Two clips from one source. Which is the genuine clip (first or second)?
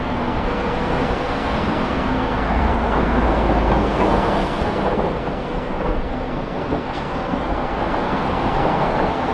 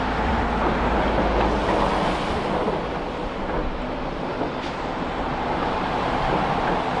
second